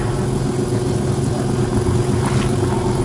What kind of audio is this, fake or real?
real